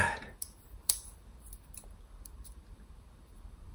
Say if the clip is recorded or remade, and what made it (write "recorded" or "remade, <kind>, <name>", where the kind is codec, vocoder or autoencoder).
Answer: remade, vocoder, BigVGAN v2